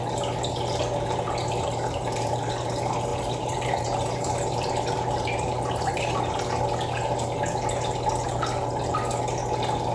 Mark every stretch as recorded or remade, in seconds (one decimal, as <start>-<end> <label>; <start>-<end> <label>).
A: 0.0-1.4 recorded; 1.4-2.5 remade; 2.5-3.1 recorded; 3.1-6.1 remade; 6.1-9.9 recorded